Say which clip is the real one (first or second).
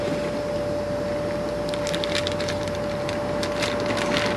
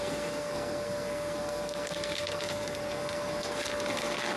first